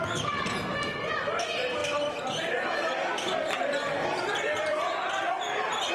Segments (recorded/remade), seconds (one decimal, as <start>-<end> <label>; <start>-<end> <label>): 0.0-5.9 recorded